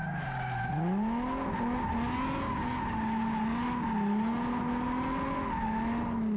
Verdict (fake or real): real